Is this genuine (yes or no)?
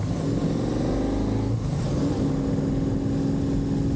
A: yes